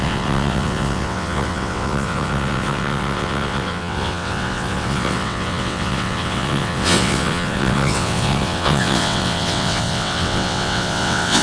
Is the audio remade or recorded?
remade